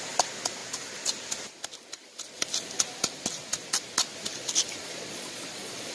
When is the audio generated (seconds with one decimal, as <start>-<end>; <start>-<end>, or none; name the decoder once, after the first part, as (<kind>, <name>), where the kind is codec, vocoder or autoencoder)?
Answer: 4.8-5.9 (vocoder, Vocos)